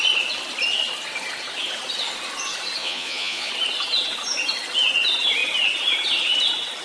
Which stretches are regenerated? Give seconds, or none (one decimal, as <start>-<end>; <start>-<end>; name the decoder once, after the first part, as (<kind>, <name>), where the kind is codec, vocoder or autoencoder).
2.8-3.5 (vocoder, Vocos)